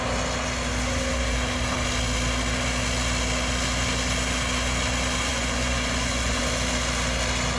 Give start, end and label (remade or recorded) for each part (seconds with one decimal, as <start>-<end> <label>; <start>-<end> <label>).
0.0-5.3 recorded; 5.3-6.4 remade; 6.4-7.6 recorded